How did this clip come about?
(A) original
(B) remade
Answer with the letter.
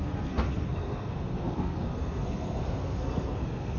B